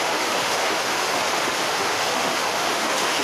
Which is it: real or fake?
fake